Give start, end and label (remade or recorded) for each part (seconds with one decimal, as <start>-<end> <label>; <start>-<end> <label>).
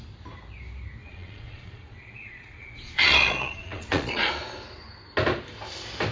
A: 0.0-1.0 recorded; 1.0-4.3 remade; 4.3-6.1 recorded